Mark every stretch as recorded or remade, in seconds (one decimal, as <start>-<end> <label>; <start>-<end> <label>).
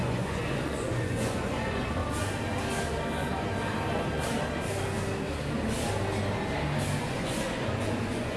0.0-2.0 remade; 2.0-7.0 recorded; 7.0-8.4 remade